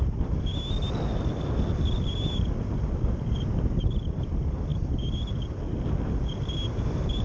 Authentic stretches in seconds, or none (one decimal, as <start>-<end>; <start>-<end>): 0.0-7.2